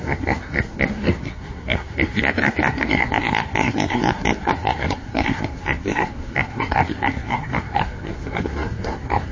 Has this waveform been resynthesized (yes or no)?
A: yes